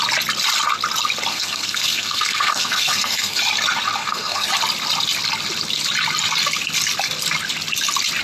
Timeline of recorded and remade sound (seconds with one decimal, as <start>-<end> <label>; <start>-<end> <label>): 0.0-1.3 recorded; 1.3-3.4 remade; 3.4-4.0 recorded; 4.0-4.5 remade; 4.5-8.2 recorded

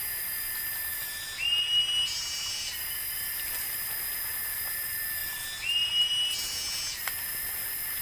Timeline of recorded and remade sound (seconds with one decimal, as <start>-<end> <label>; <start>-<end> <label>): 0.0-8.0 recorded

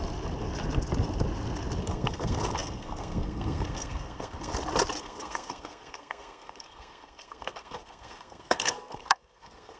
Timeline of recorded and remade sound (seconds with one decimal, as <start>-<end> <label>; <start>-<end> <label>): 0.0-1.8 recorded; 1.8-4.5 remade; 4.5-5.0 recorded; 5.0-9.8 remade